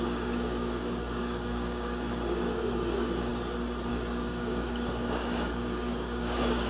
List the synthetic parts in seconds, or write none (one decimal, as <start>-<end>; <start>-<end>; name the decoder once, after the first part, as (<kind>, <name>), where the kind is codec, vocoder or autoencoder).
0.0-3.3 (codec, DAC); 3.9-6.7